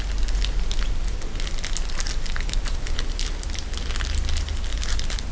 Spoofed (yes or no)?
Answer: no